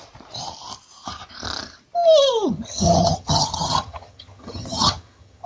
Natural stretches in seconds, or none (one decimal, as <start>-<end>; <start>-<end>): 0.0-2.5